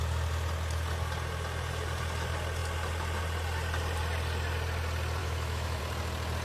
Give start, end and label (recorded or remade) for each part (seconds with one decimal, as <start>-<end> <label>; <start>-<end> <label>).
0.0-5.2 recorded; 5.2-5.8 remade; 5.8-6.4 recorded